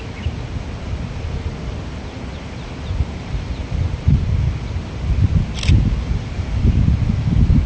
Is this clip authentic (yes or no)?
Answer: no